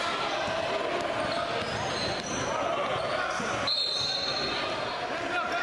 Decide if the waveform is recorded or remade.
recorded